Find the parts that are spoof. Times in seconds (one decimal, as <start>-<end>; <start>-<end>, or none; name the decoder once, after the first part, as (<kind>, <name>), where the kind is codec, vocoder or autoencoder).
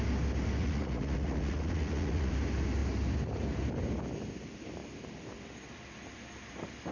0.6-2.3 (vocoder, Vocos)